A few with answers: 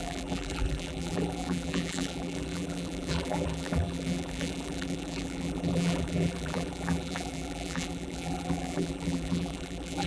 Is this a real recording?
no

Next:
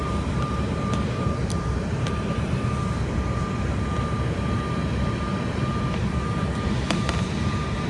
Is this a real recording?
no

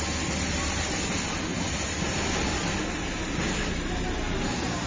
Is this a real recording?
yes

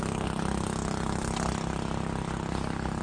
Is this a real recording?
yes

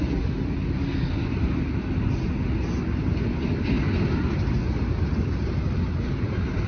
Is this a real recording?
yes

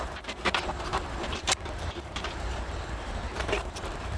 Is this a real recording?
no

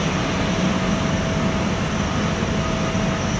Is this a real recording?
yes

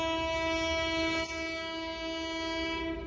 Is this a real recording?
yes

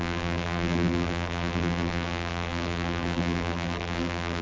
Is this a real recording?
no